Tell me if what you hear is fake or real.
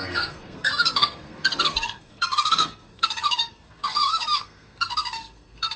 fake